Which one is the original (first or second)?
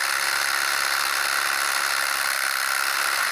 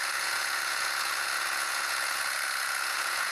first